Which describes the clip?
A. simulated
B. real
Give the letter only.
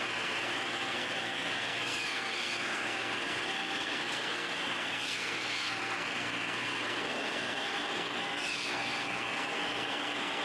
A